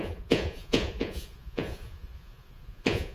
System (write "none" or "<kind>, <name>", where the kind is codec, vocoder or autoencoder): vocoder, Vocos